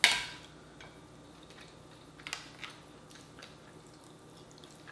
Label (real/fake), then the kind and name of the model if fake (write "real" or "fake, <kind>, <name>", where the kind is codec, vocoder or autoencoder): real